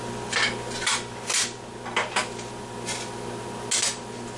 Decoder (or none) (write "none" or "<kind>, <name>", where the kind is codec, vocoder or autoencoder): none